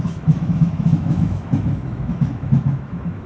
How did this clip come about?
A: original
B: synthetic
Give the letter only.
B